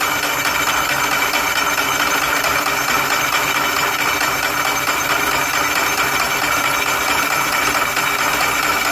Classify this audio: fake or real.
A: real